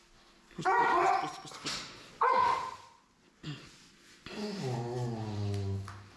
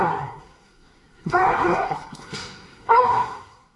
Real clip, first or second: first